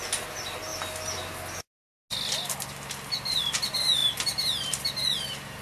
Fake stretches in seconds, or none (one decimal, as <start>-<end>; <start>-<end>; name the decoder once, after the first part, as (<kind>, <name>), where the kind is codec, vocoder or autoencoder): none